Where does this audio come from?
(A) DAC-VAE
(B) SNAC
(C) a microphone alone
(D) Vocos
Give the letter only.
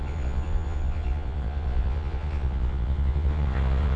D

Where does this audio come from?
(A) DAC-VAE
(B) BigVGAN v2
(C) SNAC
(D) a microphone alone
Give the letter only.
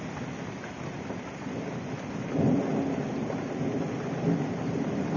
D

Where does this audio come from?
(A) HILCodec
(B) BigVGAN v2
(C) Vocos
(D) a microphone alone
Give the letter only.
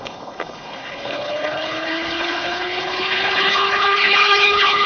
A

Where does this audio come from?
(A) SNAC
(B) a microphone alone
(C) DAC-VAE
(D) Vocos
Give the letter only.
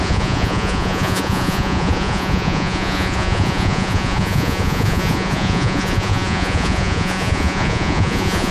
D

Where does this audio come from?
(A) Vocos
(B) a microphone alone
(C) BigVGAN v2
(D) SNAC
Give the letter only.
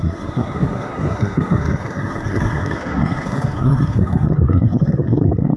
D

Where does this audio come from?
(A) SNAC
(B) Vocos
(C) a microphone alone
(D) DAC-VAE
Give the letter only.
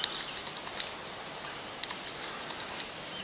C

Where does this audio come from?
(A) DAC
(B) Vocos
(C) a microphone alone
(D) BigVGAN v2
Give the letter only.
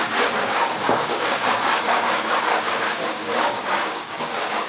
A